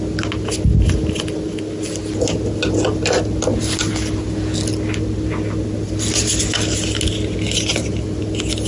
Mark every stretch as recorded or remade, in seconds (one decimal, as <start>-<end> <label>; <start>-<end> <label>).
0.0-7.7 recorded; 7.7-8.2 remade; 8.2-8.7 recorded